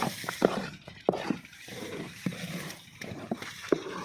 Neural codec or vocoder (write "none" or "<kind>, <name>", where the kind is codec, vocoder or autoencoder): vocoder, BigVGAN v2